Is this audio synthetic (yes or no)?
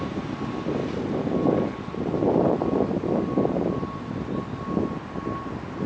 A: no